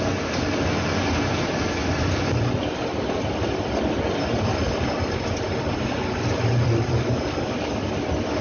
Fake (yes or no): no